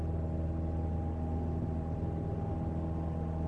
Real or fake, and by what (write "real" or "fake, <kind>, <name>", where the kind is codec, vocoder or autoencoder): real